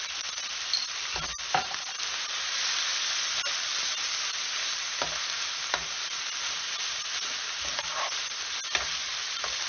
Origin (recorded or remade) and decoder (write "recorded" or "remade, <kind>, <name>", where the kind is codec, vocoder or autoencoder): recorded